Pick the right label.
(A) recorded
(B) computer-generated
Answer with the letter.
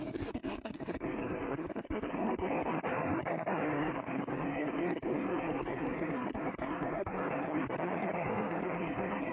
B